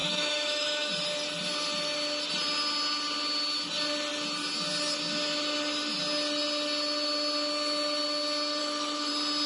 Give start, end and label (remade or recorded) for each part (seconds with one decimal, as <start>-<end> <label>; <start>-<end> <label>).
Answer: 0.0-0.9 remade; 0.9-8.6 recorded; 8.6-9.1 remade; 9.1-9.5 recorded